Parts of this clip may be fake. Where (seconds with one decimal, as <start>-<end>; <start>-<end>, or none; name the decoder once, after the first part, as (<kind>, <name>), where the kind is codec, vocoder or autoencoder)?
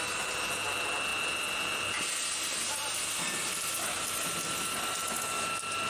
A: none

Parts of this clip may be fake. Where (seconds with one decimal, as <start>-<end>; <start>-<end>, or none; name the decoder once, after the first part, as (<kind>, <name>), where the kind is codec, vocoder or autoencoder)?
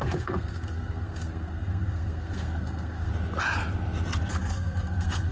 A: 0.0-3.1 (codec, SNAC); 4.3-5.3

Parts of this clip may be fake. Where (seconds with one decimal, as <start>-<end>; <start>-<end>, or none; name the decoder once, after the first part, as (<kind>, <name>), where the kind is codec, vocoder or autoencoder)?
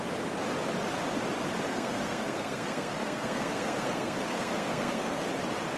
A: 1.7-5.2 (codec, SNAC)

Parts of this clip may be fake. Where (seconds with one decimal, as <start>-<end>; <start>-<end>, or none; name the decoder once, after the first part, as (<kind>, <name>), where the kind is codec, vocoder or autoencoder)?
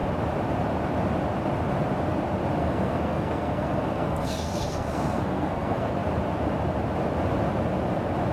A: 2.6-5.9 (codec, SNAC)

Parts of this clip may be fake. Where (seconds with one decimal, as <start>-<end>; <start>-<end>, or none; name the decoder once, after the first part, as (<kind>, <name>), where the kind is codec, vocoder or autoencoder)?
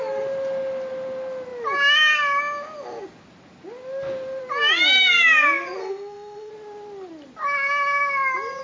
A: 5.8-6.5 (codec, SNAC)